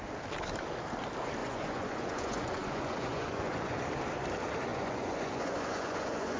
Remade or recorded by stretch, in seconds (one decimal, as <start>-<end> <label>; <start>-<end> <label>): 0.0-1.4 recorded; 1.4-3.8 remade; 3.8-4.7 recorded; 4.7-6.4 remade